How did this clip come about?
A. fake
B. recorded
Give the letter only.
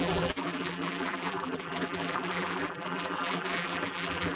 A